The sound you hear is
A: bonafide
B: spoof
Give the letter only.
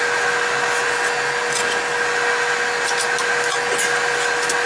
A